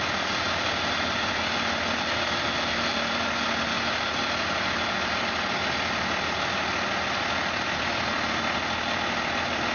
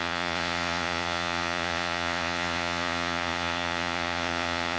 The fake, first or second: second